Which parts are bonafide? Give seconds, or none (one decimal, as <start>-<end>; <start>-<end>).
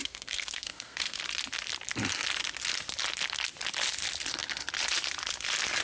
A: 1.2-5.8